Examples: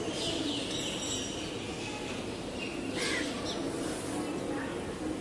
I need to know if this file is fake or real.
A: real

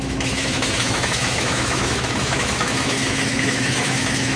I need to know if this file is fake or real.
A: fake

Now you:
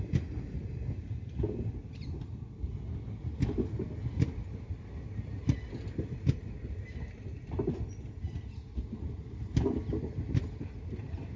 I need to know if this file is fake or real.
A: real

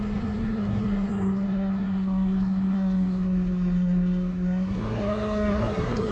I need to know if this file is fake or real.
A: fake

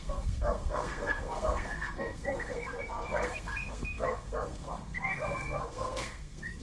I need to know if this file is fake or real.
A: fake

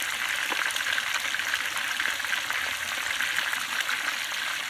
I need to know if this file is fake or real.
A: real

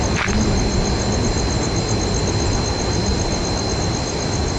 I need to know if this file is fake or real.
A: real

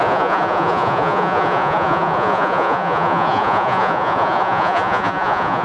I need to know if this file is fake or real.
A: fake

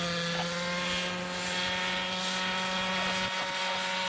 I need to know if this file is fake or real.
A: real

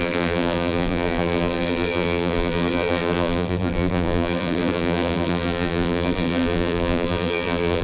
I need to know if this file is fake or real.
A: fake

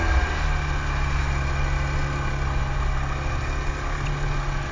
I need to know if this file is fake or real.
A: real